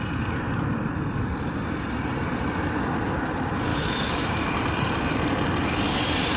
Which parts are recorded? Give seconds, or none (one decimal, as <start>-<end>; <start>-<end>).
0.0-3.7; 4.5-6.4